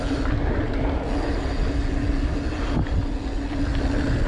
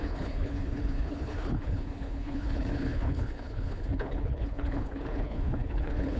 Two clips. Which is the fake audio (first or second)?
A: second